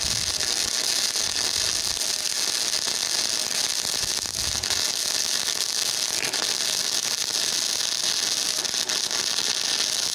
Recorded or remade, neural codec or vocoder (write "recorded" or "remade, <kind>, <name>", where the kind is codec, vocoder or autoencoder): recorded